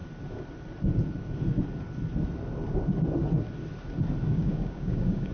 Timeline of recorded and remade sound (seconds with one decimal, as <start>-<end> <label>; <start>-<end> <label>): 0.0-4.2 recorded; 4.2-5.3 remade